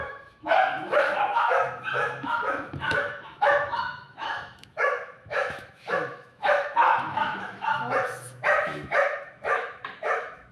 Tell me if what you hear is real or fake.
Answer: fake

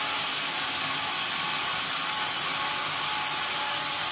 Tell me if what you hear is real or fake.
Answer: real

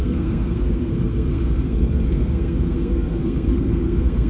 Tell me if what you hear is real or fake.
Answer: fake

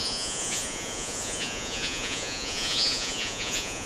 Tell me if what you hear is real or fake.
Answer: fake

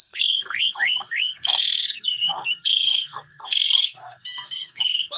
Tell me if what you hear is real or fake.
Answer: fake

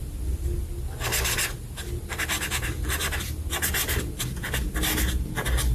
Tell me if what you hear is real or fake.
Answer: real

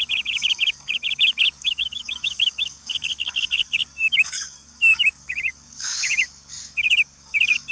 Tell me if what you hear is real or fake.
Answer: fake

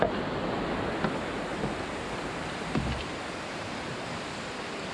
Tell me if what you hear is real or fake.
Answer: real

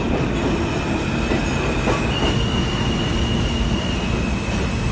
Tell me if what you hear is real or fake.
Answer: real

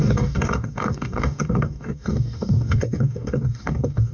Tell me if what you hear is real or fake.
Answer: fake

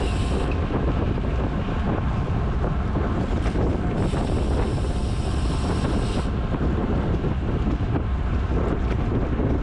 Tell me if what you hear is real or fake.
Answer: real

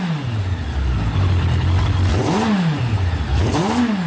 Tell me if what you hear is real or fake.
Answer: real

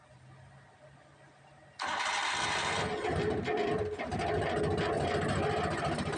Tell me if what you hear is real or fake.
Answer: real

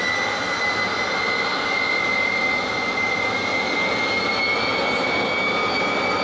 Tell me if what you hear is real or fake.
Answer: real